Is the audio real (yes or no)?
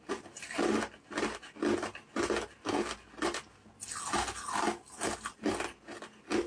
yes